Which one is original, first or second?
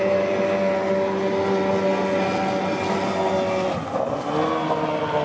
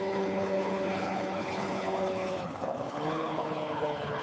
first